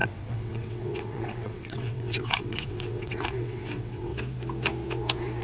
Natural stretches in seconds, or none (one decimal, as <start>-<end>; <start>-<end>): 4.1-5.4